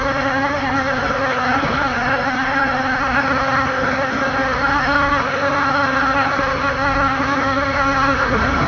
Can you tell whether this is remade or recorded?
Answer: remade